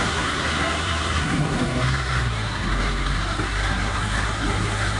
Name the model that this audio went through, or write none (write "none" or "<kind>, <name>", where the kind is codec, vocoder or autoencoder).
codec, SNAC